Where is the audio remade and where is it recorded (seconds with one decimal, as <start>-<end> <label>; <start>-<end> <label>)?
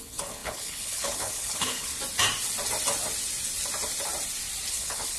0.0-1.9 remade; 1.9-4.7 recorded; 4.7-5.2 remade